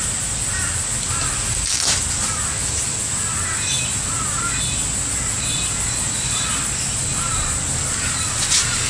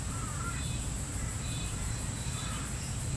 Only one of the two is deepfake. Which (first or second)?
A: second